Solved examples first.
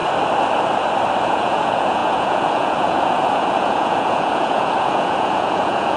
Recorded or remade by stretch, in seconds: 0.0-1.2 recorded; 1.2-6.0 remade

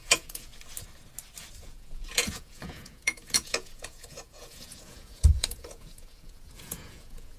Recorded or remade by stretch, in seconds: 0.0-0.5 remade; 0.5-1.6 recorded; 1.6-7.4 remade

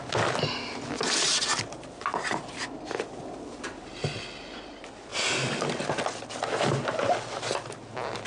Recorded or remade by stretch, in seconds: 0.0-8.3 recorded

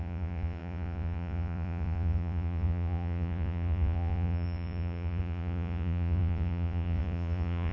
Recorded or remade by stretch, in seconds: 0.0-7.7 remade